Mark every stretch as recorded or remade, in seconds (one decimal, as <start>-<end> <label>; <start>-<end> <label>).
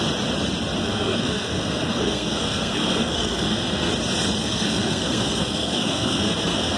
0.0-0.8 recorded; 0.8-3.9 remade; 3.9-4.4 recorded; 4.4-6.8 remade